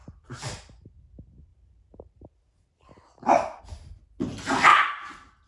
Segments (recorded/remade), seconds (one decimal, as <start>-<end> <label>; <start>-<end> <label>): 0.0-0.9 remade; 0.9-1.5 recorded; 1.5-3.6 remade; 3.6-5.5 recorded